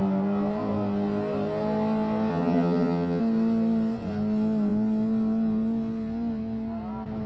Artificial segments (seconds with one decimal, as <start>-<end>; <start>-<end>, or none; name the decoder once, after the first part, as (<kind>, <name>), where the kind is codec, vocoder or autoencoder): 2.3-3.2 (vocoder, HiFi-GAN)